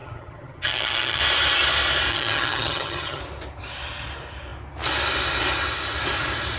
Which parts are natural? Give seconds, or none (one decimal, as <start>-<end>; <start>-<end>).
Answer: 1.2-2.1; 3.2-6.6